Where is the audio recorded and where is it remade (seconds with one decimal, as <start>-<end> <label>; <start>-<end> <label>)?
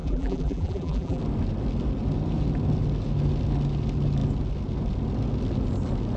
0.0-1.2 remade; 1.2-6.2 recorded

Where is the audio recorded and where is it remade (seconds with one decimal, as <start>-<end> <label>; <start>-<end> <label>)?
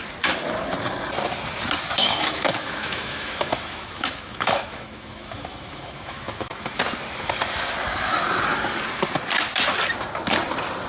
0.0-2.0 recorded; 2.0-6.8 remade; 6.8-10.9 recorded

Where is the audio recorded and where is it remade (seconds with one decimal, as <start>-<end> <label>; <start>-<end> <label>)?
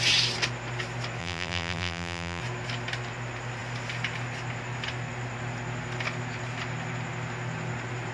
0.0-1.2 recorded; 1.2-2.4 remade; 2.4-8.1 recorded